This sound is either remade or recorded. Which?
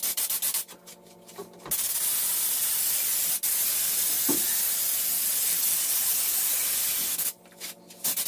recorded